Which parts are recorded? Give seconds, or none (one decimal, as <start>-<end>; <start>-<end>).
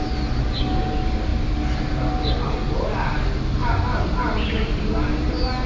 0.0-5.7